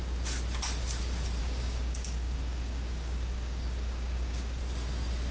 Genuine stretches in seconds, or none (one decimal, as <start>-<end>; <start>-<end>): 0.0-1.4; 4.6-5.3